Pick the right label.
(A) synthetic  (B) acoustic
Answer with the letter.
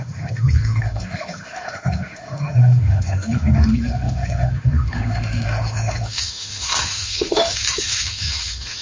A